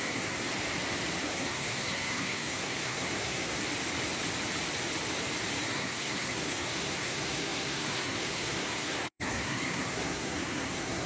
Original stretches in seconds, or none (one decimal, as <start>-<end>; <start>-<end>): 0.5-1.2; 3.6-5.6